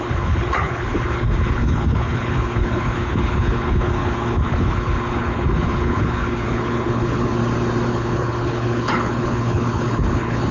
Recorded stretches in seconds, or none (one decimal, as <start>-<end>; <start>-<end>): 7.4-7.9